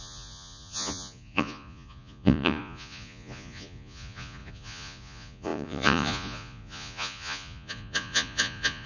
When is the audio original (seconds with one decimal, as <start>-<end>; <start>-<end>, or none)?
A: none